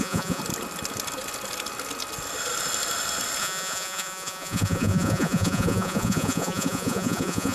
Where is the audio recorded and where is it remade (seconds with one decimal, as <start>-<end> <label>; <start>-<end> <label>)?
0.0-0.4 remade; 0.4-3.4 recorded; 3.4-7.5 remade